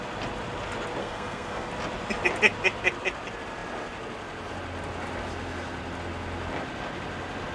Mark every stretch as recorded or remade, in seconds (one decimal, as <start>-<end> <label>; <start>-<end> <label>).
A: 0.0-1.0 recorded; 1.0-1.7 remade; 1.7-7.5 recorded